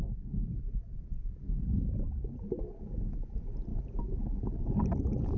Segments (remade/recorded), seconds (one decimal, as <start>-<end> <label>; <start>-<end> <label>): 0.0-5.4 recorded